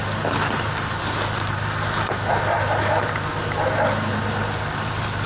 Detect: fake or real real